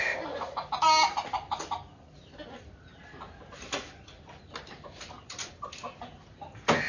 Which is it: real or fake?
real